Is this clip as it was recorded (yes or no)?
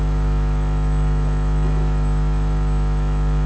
no